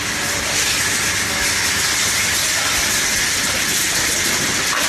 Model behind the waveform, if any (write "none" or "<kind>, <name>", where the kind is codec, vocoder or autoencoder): none